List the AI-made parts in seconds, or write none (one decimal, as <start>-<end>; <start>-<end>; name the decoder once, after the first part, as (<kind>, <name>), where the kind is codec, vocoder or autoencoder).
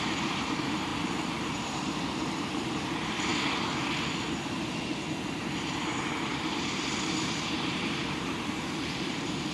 0.0-3.3 (vocoder, BigVGAN v2); 5.4-9.5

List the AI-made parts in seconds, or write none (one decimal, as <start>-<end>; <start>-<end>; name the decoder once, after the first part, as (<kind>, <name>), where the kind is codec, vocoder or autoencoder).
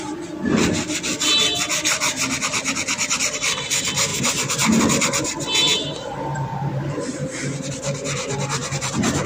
4.1-4.8 (vocoder, BigVGAN v2); 6.3-7.7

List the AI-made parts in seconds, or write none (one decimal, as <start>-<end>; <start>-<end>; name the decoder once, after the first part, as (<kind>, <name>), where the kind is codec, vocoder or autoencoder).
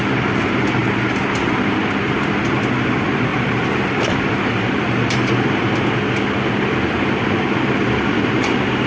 0.8-1.8 (vocoder, BigVGAN v2); 3.3-5.7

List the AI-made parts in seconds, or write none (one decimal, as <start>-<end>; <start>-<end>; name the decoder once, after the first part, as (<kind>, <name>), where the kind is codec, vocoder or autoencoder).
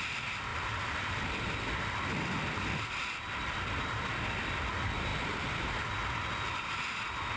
0.5-1.1 (vocoder, BigVGAN v2); 5.1-5.9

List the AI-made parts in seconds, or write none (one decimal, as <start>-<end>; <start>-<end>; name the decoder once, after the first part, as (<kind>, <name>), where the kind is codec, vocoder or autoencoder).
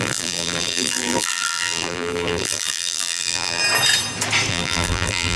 0.0-3.6 (vocoder, BigVGAN v2); 4.5-5.4